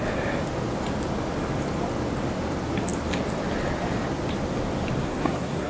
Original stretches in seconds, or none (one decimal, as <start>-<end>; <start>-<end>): 0.0-5.0